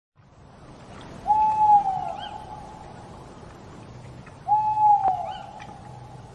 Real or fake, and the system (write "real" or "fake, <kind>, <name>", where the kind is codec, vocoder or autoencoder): real